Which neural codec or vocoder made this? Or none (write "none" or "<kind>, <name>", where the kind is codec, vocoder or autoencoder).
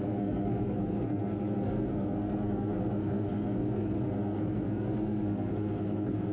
codec, SNAC